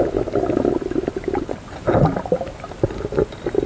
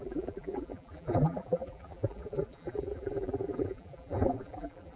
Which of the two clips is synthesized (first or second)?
second